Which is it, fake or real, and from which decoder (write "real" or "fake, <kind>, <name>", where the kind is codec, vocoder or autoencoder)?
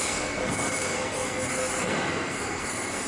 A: fake, codec, SNAC